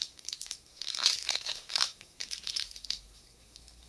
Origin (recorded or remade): remade